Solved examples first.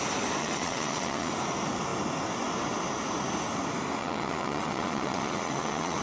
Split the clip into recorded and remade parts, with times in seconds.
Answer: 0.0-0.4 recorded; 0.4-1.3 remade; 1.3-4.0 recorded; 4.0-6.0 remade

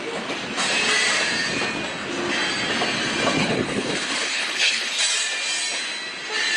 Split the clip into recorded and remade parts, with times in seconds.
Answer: 0.0-3.4 recorded; 3.4-5.0 remade; 5.0-6.6 recorded

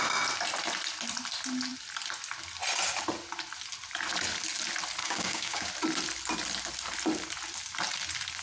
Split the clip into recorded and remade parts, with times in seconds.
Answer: 0.0-5.0 recorded; 5.0-5.7 remade; 5.7-8.4 recorded

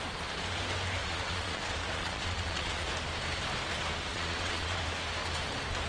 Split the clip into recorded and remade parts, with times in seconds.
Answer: 0.0-1.0 recorded; 1.0-2.9 remade; 2.9-4.1 recorded; 4.1-4.8 remade; 4.8-5.9 recorded

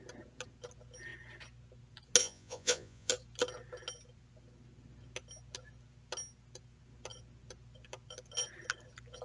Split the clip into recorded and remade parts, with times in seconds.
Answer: 0.0-2.2 recorded; 2.2-3.1 remade; 3.1-9.2 recorded

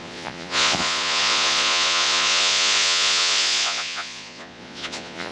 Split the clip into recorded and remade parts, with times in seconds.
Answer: 0.0-5.3 remade

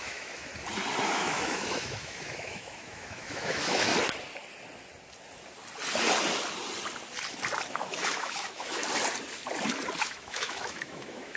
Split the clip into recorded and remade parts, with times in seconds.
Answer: 0.0-0.5 remade; 0.5-1.1 recorded; 1.1-3.9 remade; 3.9-7.7 recorded; 7.7-8.8 remade; 8.8-10.0 recorded; 10.0-11.4 remade

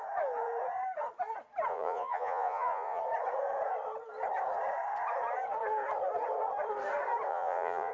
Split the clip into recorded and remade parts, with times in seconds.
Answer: 0.0-1.7 recorded; 1.7-3.0 remade; 3.0-7.3 recorded; 7.3-7.9 remade